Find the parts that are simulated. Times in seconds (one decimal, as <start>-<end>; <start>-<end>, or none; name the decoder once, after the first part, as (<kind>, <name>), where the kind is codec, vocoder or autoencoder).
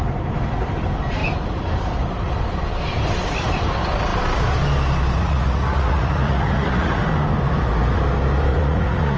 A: 5.2-7.0 (vocoder, Vocos); 8.5-9.2